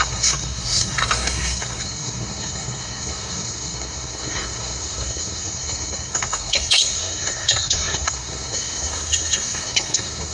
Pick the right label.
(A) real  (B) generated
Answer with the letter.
B